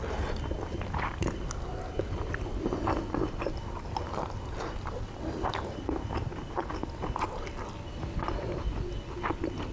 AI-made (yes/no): no